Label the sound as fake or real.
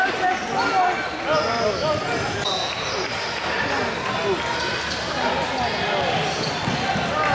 real